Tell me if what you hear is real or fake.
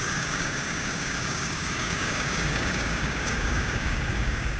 fake